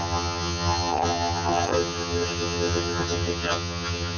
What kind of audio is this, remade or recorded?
remade